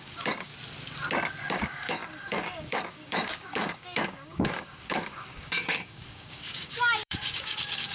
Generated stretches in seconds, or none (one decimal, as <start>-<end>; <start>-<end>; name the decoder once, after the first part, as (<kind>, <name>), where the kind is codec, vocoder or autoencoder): 0.0-0.5 (codec, DAC); 1.5-7.9